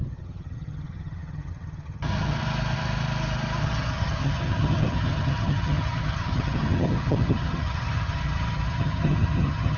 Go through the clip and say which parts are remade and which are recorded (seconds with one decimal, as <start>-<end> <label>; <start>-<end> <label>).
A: 0.0-2.4 remade; 2.4-3.6 recorded; 3.6-9.8 remade